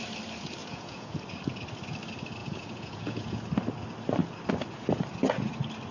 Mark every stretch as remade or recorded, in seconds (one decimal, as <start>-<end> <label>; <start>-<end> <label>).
0.0-0.6 recorded; 0.6-1.2 remade; 1.2-2.4 recorded; 2.4-3.4 remade; 3.4-5.9 recorded